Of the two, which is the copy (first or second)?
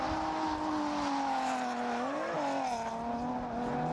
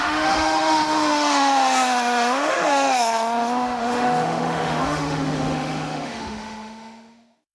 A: second